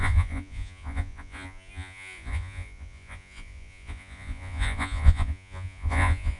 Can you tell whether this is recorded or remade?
remade